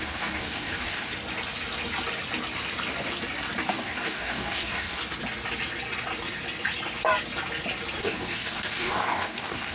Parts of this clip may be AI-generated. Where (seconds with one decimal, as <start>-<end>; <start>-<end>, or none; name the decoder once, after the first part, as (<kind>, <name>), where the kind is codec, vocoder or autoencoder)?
0.0-1.1 (codec, DAC); 3.7-5.0; 8.0-9.7